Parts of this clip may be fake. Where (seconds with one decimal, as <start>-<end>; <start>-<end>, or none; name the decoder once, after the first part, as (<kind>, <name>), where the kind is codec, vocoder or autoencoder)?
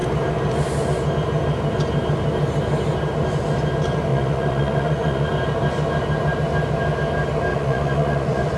4.1-5.3 (vocoder, Vocos); 7.5-8.6